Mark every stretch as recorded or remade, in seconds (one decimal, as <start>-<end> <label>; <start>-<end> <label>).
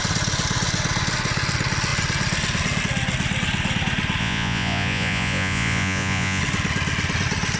0.0-4.2 recorded; 4.2-6.4 remade; 6.4-7.6 recorded